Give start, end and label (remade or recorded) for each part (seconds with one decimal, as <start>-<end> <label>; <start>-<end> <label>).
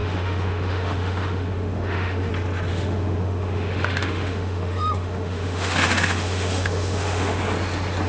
0.0-2.3 remade; 2.3-2.7 recorded; 2.7-7.4 remade; 7.4-8.1 recorded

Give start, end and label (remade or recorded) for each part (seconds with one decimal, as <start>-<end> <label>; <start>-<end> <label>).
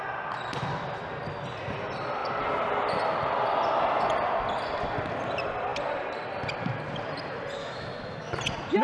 0.0-7.6 recorded; 7.6-8.3 remade; 8.3-8.8 recorded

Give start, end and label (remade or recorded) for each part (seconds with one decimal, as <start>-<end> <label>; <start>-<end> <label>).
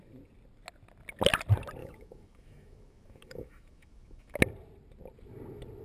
0.0-1.8 recorded; 1.8-4.4 remade; 4.4-5.8 recorded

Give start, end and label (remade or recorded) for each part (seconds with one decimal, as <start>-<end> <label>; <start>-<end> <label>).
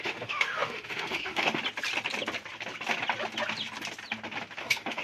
0.0-1.6 remade; 1.6-4.6 recorded; 4.6-5.0 remade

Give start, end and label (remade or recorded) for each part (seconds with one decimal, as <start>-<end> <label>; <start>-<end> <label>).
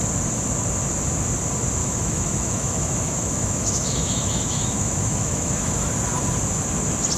0.0-1.8 recorded; 1.8-5.9 remade; 5.9-7.2 recorded